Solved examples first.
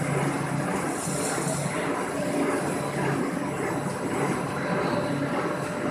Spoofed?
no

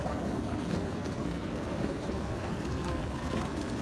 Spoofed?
yes